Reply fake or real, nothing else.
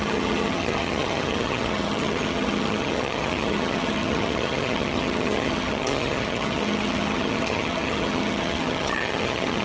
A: fake